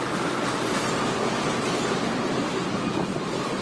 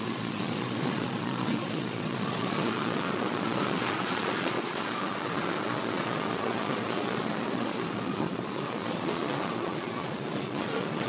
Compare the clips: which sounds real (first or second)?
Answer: first